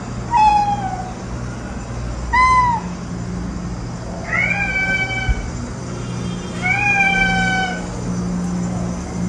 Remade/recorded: recorded